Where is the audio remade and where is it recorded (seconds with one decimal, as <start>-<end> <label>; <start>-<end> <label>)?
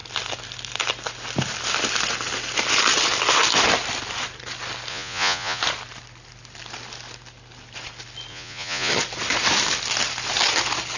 0.0-4.9 recorded; 4.9-5.6 remade; 5.6-8.3 recorded; 8.3-8.9 remade; 8.9-11.0 recorded